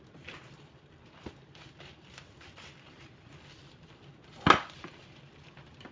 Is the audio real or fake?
real